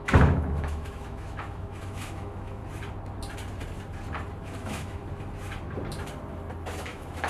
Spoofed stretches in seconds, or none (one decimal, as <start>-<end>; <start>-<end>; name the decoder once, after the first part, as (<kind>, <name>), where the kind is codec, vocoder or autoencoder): 0.0-2.6 (autoencoder, DAC-VAE); 4.4-5.0; 6.8-7.3